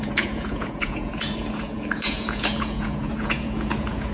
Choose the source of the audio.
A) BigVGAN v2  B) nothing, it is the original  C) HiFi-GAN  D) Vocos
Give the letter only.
D